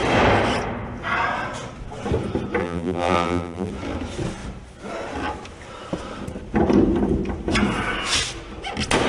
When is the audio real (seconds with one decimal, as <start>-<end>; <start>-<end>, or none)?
0.0-2.6; 3.7-9.1

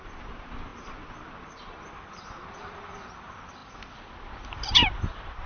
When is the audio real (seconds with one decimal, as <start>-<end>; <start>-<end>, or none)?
none

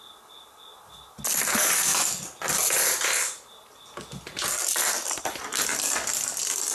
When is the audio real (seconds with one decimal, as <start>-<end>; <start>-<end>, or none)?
0.0-4.6; 5.6-6.7

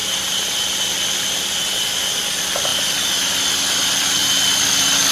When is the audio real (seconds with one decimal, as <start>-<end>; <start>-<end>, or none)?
none

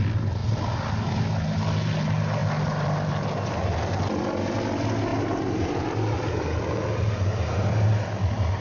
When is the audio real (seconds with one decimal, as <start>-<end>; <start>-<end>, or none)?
0.0-0.4; 1.2-2.4; 3.1-5.1; 6.3-8.6